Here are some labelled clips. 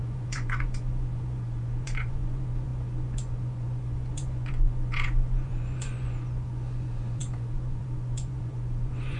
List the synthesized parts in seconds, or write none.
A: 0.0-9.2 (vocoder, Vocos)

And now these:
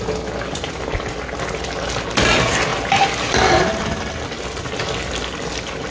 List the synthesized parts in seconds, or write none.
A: none

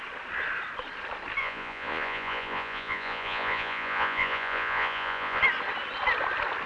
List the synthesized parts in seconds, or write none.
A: 1.4-5.4 (vocoder, Vocos)

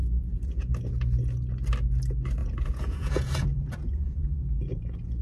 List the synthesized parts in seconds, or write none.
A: 0.0-0.7 (vocoder, Vocos); 2.4-5.2

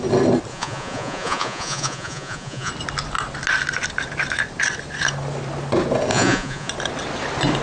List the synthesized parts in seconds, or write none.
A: 0.5-2.7 (vocoder, Vocos); 6.1-6.7

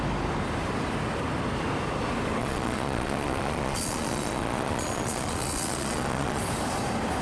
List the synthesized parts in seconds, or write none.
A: 2.4-6.4 (vocoder, Vocos)